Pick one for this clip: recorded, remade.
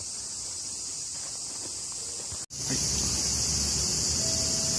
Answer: recorded